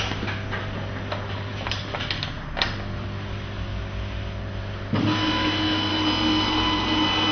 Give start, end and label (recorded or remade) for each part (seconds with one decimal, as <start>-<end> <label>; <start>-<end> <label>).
0.0-7.3 recorded